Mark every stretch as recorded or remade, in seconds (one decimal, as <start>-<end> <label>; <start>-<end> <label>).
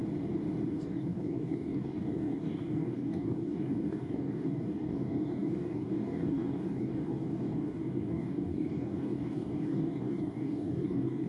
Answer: 0.0-0.7 recorded; 0.7-11.3 remade